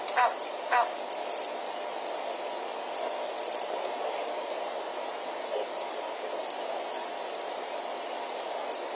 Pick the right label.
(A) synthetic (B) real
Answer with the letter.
B